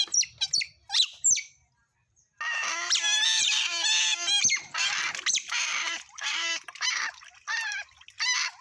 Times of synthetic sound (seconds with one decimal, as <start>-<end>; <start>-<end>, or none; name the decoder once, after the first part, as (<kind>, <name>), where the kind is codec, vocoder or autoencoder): 5.7-7.0 (vocoder, BigVGAN v2)

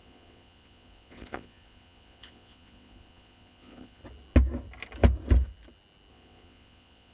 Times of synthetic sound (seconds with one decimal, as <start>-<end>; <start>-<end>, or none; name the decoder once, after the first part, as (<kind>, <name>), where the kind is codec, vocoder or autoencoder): 0.0-4.0 (vocoder, Vocos); 6.1-7.1

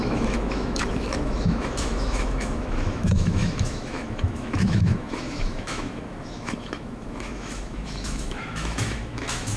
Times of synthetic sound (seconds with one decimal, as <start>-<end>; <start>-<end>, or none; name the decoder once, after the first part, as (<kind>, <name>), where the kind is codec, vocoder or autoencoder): 0.0-9.6 (autoencoder, DAC-VAE)

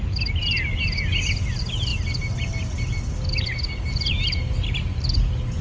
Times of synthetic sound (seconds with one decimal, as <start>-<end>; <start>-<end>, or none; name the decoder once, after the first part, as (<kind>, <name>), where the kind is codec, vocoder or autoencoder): none

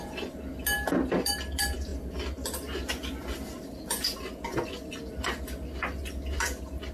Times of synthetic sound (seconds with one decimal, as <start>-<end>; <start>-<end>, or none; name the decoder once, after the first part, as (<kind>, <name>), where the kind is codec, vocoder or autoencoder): none

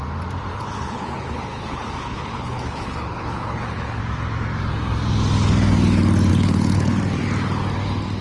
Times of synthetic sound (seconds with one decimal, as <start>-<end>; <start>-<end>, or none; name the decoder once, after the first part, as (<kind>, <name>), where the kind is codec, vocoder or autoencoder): 0.5-4.0 (codec, HILCodec); 6.3-7.0